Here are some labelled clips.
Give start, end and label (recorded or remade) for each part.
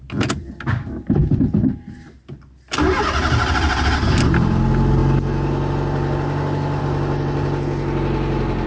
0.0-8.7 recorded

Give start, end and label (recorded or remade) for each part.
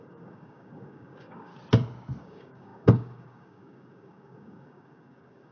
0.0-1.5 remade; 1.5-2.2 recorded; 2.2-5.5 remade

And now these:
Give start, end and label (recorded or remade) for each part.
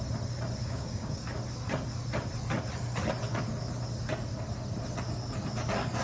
0.0-0.6 recorded; 0.6-1.2 remade; 1.2-6.0 recorded